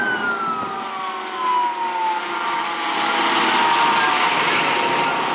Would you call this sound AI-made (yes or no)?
no